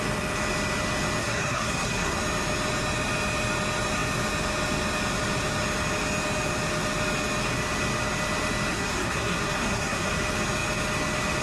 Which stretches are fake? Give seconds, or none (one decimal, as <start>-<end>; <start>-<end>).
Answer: 1.2-2.2; 8.7-10.2